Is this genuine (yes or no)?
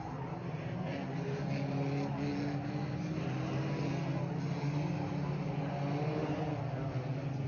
yes